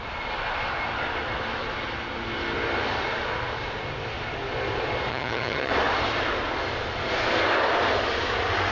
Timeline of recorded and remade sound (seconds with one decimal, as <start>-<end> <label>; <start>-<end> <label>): 0.0-5.1 recorded; 5.1-5.7 remade; 5.7-8.7 recorded